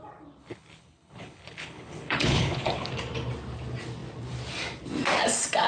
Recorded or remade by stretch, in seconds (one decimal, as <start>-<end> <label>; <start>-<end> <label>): 0.0-0.4 recorded; 0.4-2.9 remade; 2.9-5.7 recorded